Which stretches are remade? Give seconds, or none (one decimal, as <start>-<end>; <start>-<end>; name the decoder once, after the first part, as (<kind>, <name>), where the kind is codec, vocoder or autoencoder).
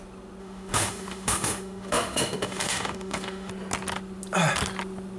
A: 0.4-3.5 (autoencoder, DAC-VAE)